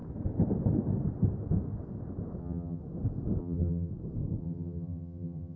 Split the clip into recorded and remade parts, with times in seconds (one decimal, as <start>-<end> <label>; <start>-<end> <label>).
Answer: 0.0-2.4 recorded; 2.4-2.8 remade; 2.8-3.4 recorded; 3.4-3.9 remade; 3.9-4.4 recorded; 4.4-5.6 remade